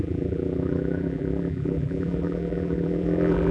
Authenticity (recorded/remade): remade